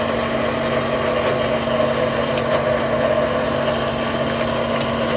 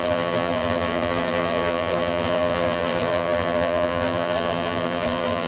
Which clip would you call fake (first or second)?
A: second